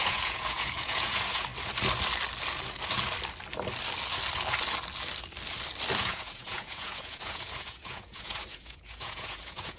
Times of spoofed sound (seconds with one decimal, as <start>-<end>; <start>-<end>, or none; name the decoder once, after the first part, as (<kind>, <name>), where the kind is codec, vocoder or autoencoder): 0.0-1.5 (vocoder, Vocos); 6.0-9.8